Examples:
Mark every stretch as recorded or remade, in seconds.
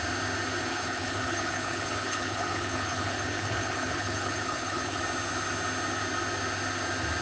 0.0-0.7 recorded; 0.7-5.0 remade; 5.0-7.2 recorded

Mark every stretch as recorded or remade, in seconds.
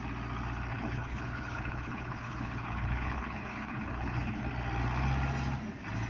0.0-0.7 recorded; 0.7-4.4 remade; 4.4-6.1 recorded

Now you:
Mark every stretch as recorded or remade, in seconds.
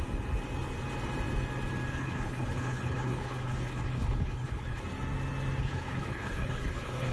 0.0-1.9 recorded; 1.9-4.8 remade; 4.8-5.6 recorded; 5.6-7.1 remade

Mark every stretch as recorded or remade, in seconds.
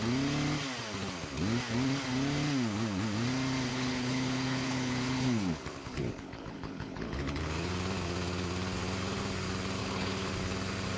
0.0-3.7 recorded; 3.7-7.4 remade; 7.4-9.8 recorded; 9.8-10.3 remade; 10.3-11.0 recorded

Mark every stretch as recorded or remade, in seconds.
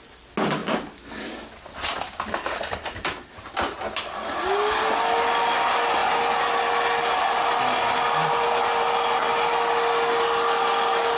0.0-11.2 recorded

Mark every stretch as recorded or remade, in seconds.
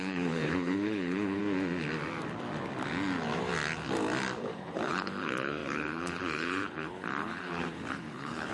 0.0-1.4 remade; 1.4-4.4 recorded; 4.4-8.5 remade